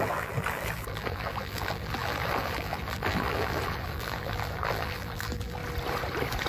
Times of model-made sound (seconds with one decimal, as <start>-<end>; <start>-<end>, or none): 0.0-5.6